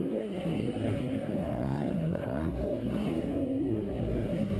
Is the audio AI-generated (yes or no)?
yes